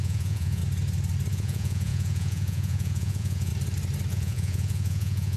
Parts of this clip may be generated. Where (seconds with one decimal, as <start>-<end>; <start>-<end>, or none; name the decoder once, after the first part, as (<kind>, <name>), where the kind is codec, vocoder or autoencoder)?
0.0-0.6 (vocoder, Vocos); 1.3-3.5; 4.1-5.4